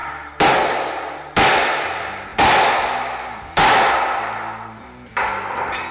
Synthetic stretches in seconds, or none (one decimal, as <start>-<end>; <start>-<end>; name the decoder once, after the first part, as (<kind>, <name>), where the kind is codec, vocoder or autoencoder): none